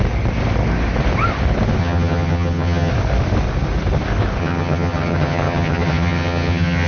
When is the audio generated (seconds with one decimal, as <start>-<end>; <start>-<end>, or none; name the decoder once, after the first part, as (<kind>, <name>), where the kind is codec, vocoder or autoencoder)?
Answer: 1.8-2.9 (vocoder, HiFi-GAN); 4.4-6.9

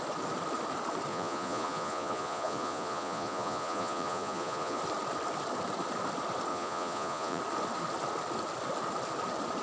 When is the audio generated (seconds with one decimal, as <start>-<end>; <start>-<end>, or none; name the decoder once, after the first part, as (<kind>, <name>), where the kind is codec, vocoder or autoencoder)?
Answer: 1.1-4.8 (vocoder, Vocos); 6.5-7.4

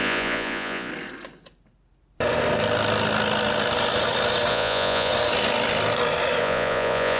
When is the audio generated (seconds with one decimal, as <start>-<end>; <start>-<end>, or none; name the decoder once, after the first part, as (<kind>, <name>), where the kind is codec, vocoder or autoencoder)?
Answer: 0.0-0.9 (vocoder, Vocos); 4.5-5.1; 6.4-7.2

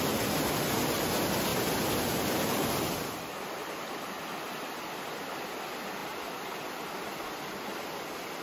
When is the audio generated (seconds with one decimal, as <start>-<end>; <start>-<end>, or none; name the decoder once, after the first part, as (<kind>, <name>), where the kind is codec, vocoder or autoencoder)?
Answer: none

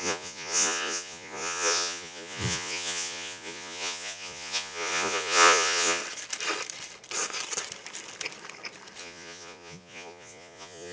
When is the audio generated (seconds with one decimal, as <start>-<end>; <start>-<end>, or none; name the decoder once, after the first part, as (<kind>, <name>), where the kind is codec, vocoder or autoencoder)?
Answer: 0.0-6.0 (vocoder, Vocos); 9.0-10.9